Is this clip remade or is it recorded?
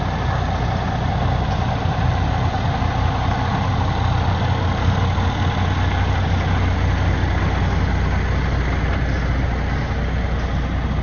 recorded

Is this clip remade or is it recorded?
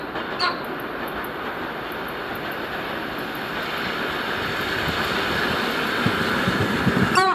recorded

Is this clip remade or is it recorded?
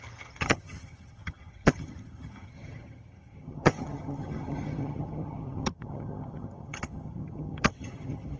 remade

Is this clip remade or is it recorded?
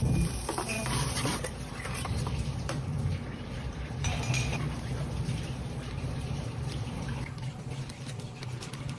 remade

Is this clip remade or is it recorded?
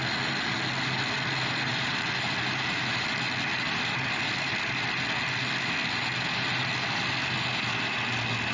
recorded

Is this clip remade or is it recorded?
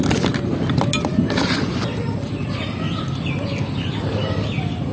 recorded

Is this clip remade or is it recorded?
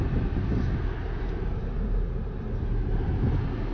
recorded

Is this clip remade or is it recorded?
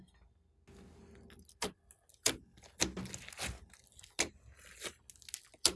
recorded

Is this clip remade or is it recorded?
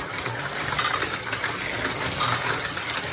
recorded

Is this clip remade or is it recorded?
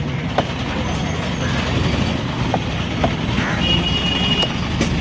recorded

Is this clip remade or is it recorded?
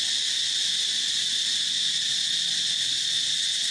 recorded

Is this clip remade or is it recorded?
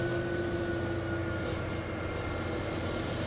recorded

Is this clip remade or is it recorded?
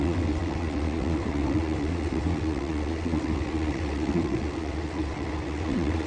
remade